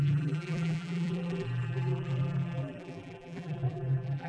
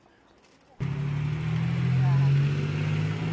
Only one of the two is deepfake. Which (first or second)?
first